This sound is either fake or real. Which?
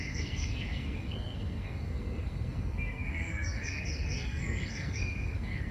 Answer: fake